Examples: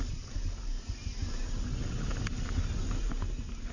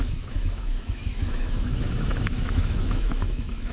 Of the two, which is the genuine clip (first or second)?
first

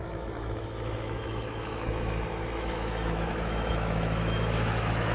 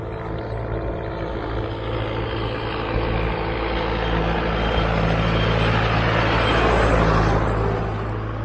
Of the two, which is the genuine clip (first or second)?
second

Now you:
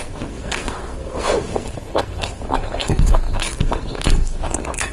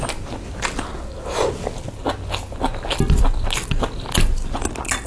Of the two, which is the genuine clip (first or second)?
second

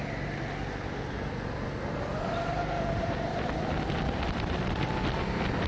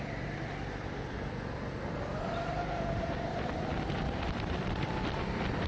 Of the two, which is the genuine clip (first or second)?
first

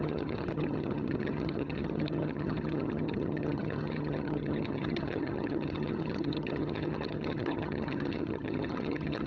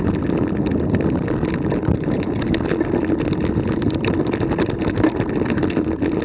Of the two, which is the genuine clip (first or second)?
second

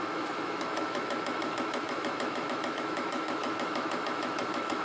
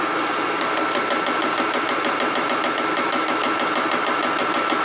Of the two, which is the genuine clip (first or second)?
second